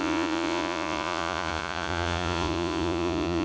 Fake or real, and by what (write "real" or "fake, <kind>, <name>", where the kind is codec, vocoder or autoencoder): fake, vocoder, Vocos